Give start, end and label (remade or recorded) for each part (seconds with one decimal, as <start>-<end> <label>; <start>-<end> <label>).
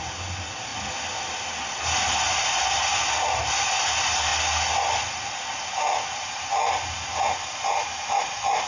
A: 0.0-8.7 recorded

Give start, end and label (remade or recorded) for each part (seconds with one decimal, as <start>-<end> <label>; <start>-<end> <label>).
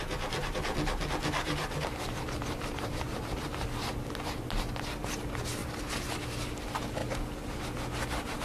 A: 0.0-1.6 recorded; 1.6-3.4 remade; 3.4-5.6 recorded; 5.6-6.2 remade; 6.2-8.4 recorded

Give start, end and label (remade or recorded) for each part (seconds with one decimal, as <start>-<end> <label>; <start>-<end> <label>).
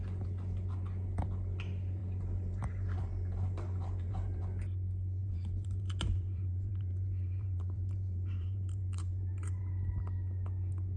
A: 0.0-2.0 recorded; 2.0-4.4 remade; 4.4-5.2 recorded; 5.2-9.6 remade; 9.6-11.0 recorded